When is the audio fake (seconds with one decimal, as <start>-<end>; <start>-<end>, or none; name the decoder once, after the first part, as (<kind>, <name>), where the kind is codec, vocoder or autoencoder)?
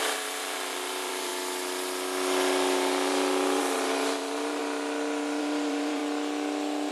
0.0-1.3 (vocoder, BigVGAN v2); 3.6-4.6; 5.4-6.0